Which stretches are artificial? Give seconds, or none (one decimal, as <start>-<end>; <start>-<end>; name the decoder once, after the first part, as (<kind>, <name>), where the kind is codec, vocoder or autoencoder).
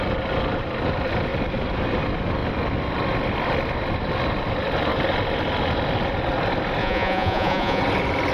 6.8-7.8 (vocoder, Vocos)